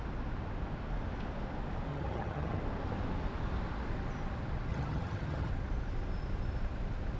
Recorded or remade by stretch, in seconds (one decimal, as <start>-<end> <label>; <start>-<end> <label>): 0.0-1.9 recorded; 1.9-2.6 remade; 2.6-4.7 recorded; 4.7-5.5 remade; 5.5-7.2 recorded